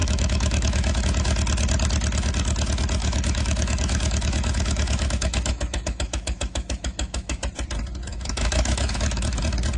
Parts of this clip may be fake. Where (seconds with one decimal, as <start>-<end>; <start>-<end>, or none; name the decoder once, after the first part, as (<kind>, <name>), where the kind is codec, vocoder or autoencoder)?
0.0-1.0 (autoencoder, DAC-VAE); 3.0-7.4; 8.1-9.4